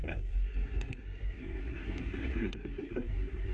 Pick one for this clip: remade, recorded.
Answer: remade